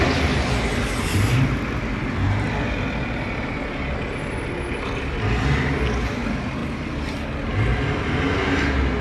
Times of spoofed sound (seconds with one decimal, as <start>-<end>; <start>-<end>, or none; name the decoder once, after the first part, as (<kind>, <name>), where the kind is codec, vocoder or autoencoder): none